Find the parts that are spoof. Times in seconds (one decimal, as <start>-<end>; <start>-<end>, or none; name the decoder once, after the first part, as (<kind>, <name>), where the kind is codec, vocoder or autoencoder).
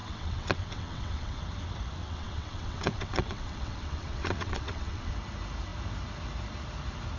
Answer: 0.0-1.4 (vocoder, WaveNeXt); 2.0-5.1